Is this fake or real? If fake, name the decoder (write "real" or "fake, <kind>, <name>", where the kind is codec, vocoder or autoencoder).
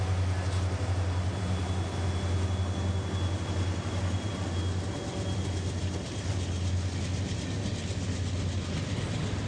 real